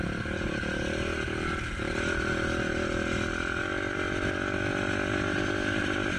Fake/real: real